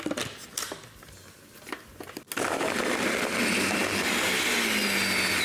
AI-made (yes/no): no